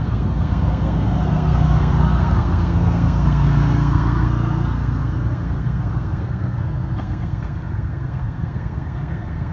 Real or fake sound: fake